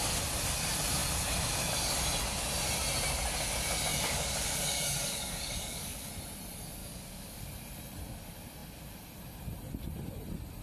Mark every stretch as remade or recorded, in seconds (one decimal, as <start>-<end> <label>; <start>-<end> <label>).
0.0-3.9 recorded; 3.9-6.1 remade; 6.1-6.8 recorded; 6.8-7.4 remade; 7.4-10.6 recorded